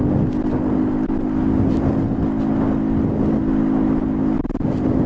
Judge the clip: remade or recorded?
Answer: recorded